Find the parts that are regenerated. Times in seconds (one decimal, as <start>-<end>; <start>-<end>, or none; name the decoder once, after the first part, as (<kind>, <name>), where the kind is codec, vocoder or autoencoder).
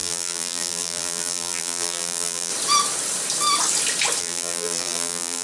0.0-2.5 (vocoder, BigVGAN v2); 4.2-5.4